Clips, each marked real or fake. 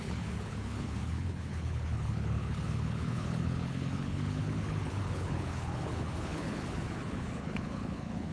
fake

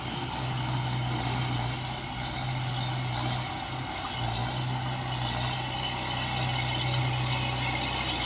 real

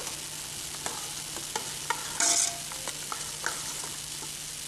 real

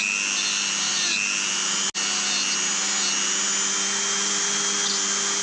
real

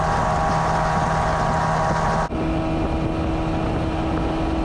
real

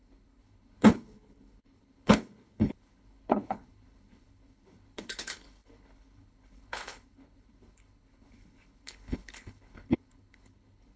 fake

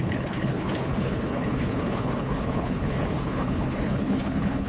fake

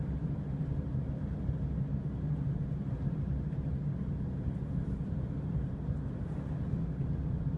real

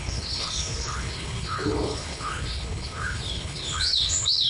fake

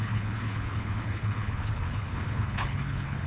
fake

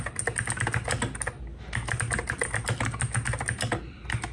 real